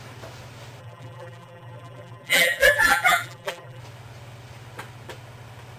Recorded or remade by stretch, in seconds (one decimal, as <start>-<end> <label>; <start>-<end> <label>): 0.0-0.8 recorded; 0.8-3.8 remade; 3.8-5.8 recorded